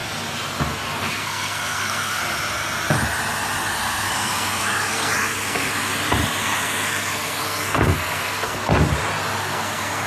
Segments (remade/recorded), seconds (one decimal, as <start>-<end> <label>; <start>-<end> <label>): 0.0-1.0 recorded; 1.0-2.2 remade; 2.2-3.8 recorded; 3.8-5.9 remade; 5.9-6.4 recorded; 6.4-8.7 remade; 8.7-9.4 recorded; 9.4-10.1 remade